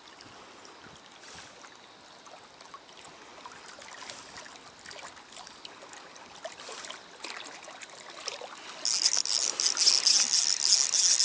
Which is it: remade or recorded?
recorded